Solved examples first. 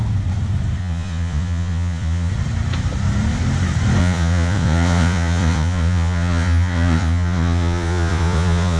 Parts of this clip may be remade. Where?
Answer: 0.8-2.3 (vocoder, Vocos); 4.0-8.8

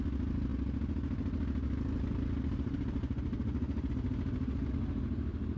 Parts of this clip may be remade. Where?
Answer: none

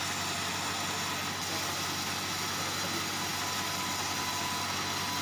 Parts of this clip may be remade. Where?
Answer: none